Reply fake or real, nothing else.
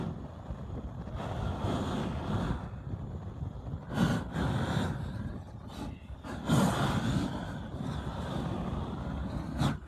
real